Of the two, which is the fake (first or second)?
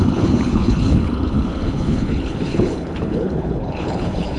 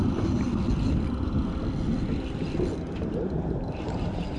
first